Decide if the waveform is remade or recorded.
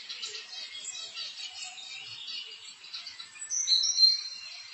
recorded